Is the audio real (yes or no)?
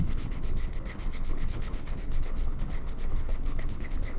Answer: no